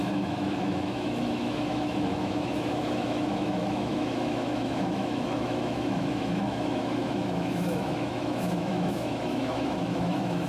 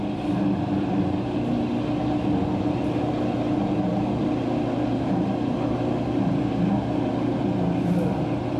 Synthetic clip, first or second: first